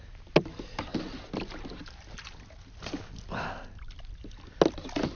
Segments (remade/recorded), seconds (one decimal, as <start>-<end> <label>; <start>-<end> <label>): 0.0-5.1 recorded